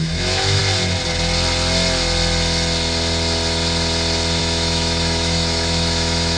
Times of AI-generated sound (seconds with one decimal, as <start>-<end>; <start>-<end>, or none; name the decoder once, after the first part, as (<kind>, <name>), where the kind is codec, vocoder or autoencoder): 0.0-0.6 (autoencoder, DAC-VAE); 4.4-6.4